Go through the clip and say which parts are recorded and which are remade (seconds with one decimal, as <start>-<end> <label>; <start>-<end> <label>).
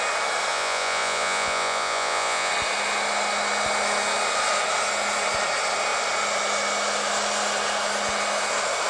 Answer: 0.0-0.5 recorded; 0.5-2.5 remade; 2.5-8.9 recorded